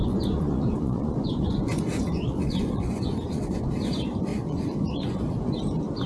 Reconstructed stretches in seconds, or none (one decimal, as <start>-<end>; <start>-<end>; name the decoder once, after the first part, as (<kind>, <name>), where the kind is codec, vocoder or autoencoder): 0.0-3.7 (vocoder, Vocos); 4.3-5.2